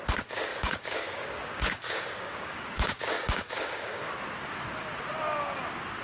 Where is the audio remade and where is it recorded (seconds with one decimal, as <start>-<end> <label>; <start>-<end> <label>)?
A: 0.0-0.5 recorded; 0.5-4.1 remade; 4.1-6.0 recorded

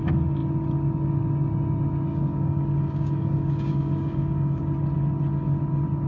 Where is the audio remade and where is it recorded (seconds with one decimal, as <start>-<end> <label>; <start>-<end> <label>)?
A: 0.0-2.1 recorded; 2.1-4.6 remade; 4.6-6.1 recorded

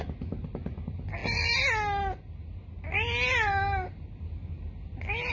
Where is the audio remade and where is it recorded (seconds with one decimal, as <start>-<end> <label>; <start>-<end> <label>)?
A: 0.0-5.3 recorded

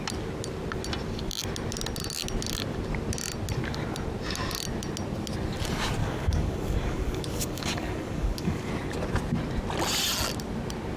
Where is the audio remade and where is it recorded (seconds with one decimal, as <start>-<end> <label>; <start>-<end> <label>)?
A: 0.0-6.0 recorded; 6.0-8.7 remade; 8.7-11.0 recorded

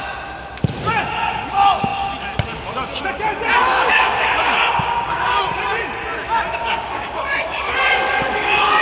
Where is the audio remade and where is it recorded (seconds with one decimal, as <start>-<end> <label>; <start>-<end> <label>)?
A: 0.0-3.6 recorded; 3.6-5.4 remade; 5.4-6.6 recorded; 6.6-8.8 remade

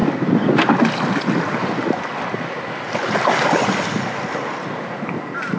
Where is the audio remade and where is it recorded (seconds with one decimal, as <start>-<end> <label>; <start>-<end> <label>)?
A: 0.0-5.6 recorded

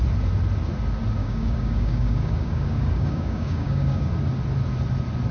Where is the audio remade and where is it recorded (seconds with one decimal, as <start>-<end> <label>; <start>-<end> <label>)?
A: 0.0-1.2 recorded; 1.2-4.1 remade; 4.1-5.3 recorded

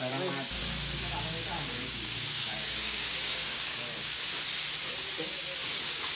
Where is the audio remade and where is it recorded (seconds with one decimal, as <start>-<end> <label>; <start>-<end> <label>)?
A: 0.0-0.6 recorded; 0.6-4.3 remade; 4.3-6.1 recorded